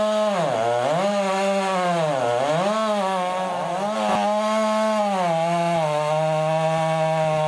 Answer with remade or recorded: recorded